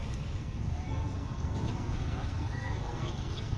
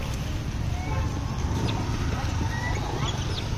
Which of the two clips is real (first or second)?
second